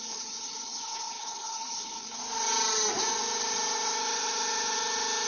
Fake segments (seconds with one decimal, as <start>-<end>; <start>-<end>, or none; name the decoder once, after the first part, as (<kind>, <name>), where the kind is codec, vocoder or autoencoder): 0.0-2.2 (codec, HILCodec)